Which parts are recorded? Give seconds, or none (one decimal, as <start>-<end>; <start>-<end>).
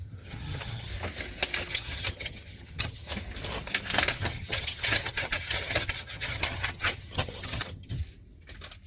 0.9-1.7; 3.1-4.1; 8.0-8.9